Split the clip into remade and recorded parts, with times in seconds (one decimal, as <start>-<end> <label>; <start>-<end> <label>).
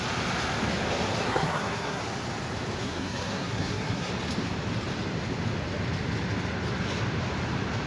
0.0-1.2 recorded; 1.2-2.0 remade; 2.0-2.8 recorded; 2.8-4.1 remade; 4.1-7.9 recorded